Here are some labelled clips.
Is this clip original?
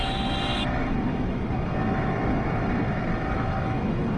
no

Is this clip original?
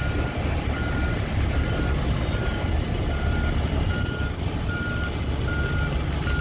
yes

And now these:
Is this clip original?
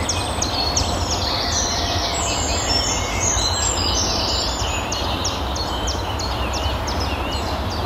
yes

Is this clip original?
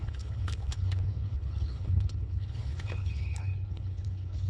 no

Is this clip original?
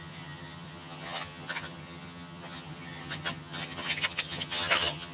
no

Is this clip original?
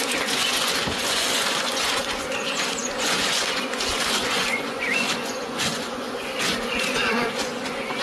no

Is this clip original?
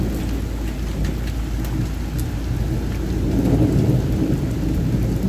yes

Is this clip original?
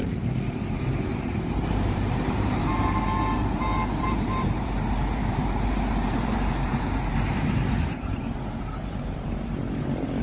no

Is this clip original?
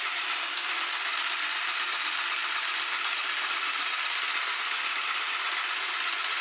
yes